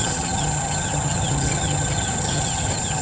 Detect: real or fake fake